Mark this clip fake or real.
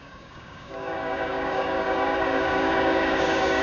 fake